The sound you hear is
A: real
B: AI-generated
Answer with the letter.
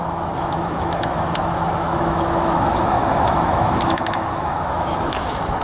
B